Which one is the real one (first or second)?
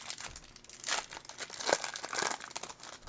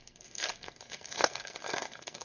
first